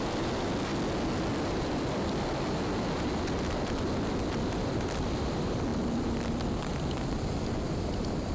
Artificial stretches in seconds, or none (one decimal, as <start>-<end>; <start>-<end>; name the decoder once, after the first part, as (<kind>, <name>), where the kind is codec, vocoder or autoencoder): 0.0-0.7 (vocoder, BigVGAN v2); 1.4-8.3